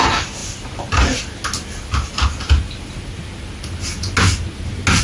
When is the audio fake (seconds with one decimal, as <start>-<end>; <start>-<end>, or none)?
none